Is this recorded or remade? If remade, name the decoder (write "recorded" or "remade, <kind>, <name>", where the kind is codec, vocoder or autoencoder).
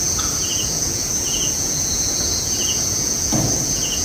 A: remade, vocoder, Vocos